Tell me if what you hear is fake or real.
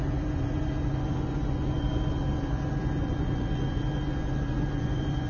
fake